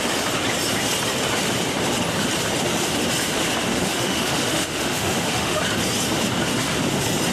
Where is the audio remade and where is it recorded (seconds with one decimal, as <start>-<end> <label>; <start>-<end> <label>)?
0.0-3.7 recorded; 3.7-5.6 remade; 5.6-7.3 recorded